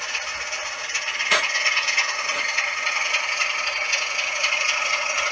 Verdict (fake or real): fake